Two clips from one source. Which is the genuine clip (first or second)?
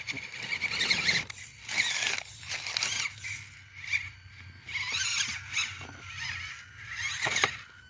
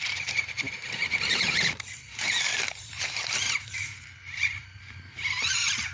first